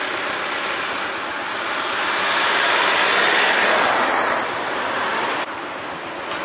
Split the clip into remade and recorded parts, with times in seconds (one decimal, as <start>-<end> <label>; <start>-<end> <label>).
0.0-6.4 recorded